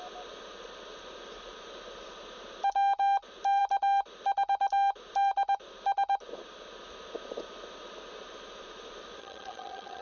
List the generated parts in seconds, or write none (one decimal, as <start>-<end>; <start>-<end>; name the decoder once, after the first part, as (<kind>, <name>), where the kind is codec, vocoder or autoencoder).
9.2-10.0 (vocoder, HiFi-GAN)